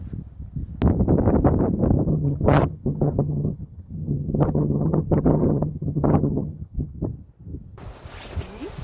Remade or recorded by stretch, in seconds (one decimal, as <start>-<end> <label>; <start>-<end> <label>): 0.0-2.1 recorded; 2.1-6.9 remade; 6.9-8.8 recorded